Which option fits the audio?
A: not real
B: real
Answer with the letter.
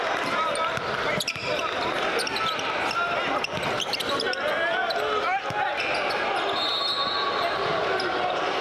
B